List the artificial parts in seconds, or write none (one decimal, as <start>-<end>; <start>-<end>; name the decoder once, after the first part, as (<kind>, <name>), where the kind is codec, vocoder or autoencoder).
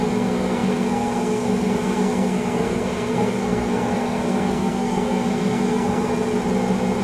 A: 0.0-6.1 (codec, SNAC)